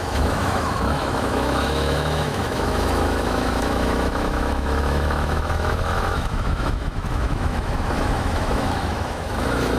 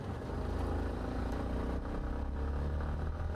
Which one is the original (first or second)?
second